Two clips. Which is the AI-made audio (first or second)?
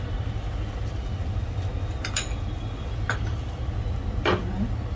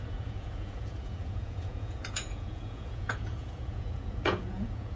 second